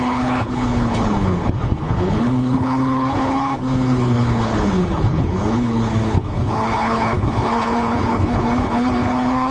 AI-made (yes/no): yes